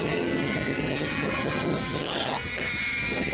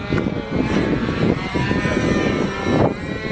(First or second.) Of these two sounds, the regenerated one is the first